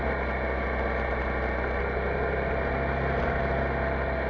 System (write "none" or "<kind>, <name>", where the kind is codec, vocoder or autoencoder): none